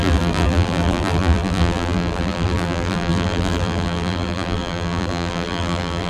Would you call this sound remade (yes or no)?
yes